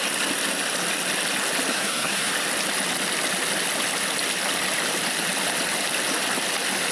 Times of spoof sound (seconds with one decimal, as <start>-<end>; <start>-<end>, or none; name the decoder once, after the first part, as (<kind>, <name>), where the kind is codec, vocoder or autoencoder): 1.7-2.3 (codec, SNAC)